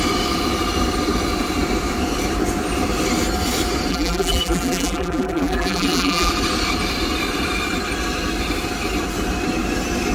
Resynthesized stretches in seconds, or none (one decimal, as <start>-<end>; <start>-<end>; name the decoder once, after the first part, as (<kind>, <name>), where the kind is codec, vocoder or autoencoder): 3.9-6.3 (vocoder, BigVGAN v2)